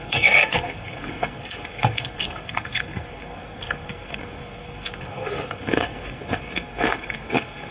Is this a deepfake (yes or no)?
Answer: yes